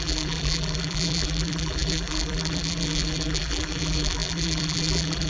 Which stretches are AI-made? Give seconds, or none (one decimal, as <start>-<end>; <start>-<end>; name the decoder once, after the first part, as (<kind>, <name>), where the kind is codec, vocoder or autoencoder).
0.0-5.3 (vocoder, BigVGAN v2)